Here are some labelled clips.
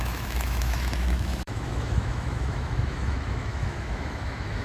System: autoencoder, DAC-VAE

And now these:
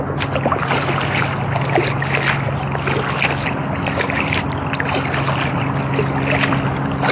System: none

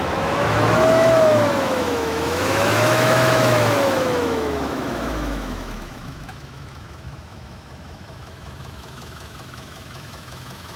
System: autoencoder, DAC-VAE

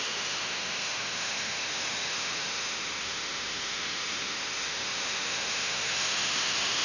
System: autoencoder, DAC-VAE